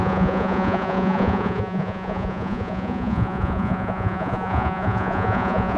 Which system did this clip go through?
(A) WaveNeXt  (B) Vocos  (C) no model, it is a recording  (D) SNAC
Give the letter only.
B